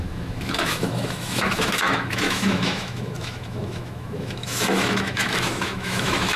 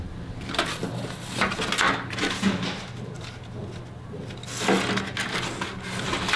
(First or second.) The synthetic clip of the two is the first